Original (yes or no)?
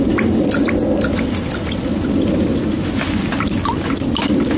yes